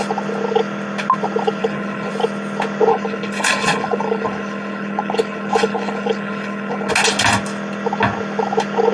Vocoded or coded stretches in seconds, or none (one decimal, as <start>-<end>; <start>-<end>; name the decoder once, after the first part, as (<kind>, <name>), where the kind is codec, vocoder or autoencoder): 1.6-2.1 (codec, HILCodec); 2.9-6.9